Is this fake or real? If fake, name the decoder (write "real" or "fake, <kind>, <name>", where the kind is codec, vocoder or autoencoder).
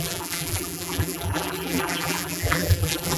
fake, vocoder, BigVGAN v2